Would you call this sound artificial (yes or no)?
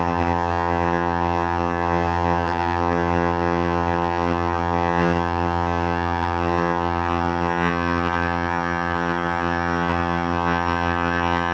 yes